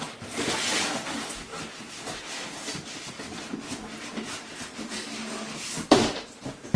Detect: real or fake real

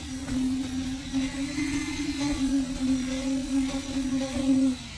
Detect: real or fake fake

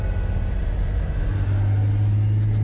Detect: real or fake real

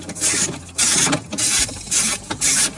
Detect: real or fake fake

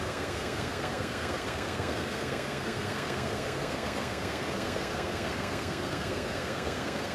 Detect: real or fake fake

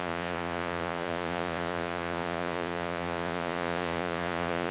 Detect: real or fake fake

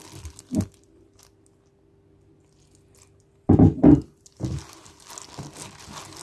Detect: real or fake real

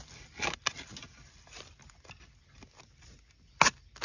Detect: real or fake real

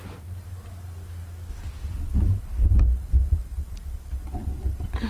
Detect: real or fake real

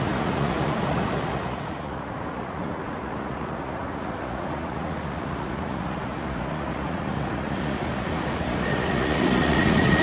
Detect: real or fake fake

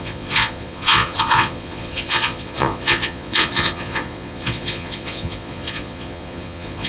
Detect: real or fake fake